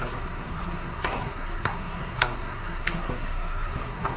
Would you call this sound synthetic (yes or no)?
yes